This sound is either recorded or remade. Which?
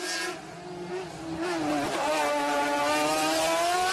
recorded